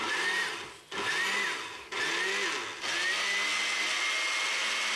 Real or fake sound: real